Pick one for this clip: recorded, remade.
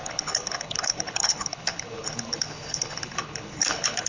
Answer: remade